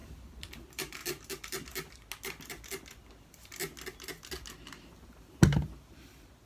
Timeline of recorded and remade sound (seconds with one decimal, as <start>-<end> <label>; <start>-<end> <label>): 0.0-1.0 remade; 1.0-3.3 recorded; 3.3-3.7 remade; 3.7-6.5 recorded